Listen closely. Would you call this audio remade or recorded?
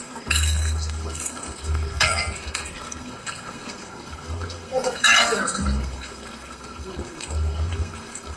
remade